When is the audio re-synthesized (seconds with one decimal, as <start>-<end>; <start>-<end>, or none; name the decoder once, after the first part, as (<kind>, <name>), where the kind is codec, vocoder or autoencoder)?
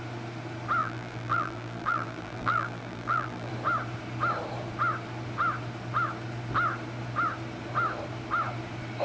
0.8-3.5 (vocoder, BigVGAN v2)